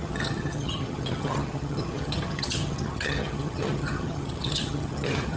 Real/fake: fake